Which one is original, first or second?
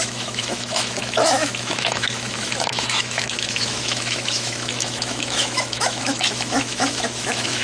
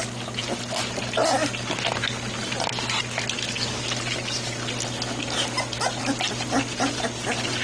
second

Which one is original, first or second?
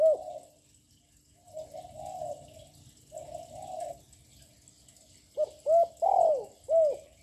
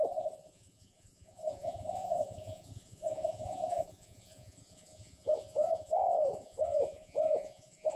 first